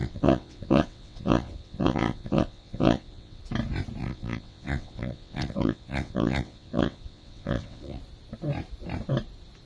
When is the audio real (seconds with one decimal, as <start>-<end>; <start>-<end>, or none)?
3.4-4.0; 8.0-9.7